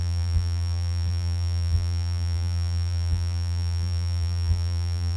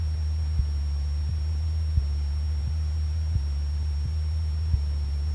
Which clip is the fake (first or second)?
first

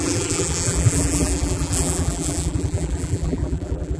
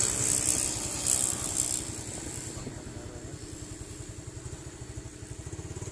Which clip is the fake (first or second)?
first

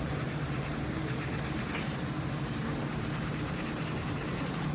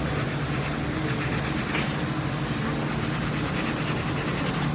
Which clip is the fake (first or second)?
first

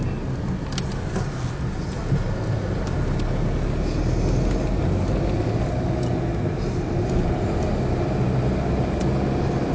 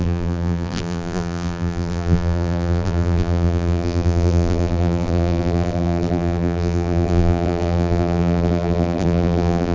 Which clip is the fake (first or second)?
second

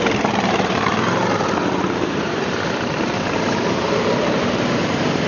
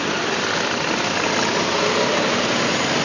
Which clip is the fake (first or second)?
first